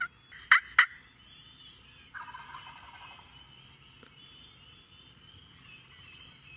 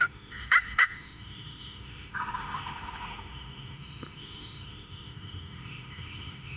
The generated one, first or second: second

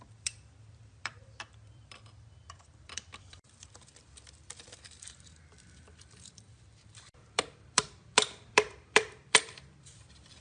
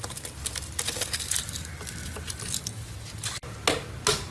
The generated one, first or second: first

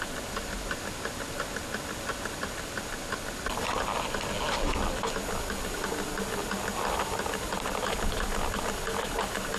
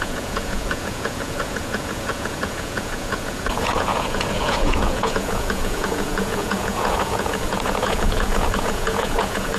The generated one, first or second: second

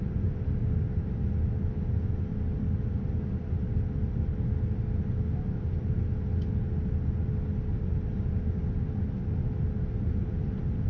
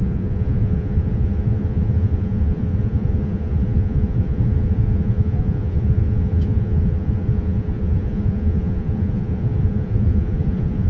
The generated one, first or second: second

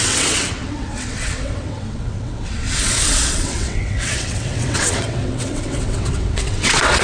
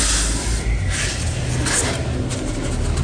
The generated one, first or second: first